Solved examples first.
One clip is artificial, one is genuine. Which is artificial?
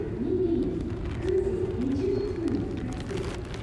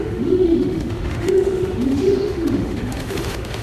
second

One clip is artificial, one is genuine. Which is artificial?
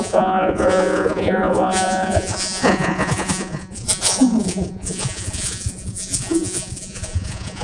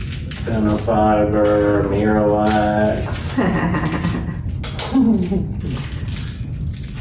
first